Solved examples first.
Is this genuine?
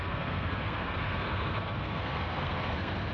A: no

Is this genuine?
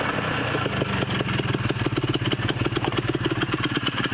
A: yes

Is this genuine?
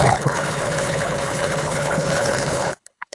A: no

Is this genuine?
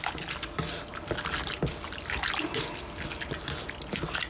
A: yes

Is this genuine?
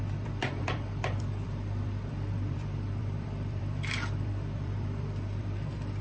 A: no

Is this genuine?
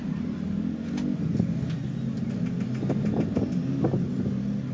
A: yes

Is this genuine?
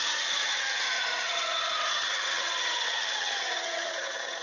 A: no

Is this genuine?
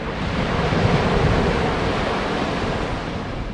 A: yes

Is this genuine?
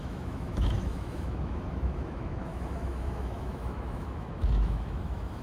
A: no